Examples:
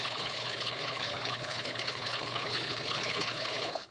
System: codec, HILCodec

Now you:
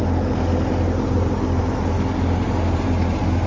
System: none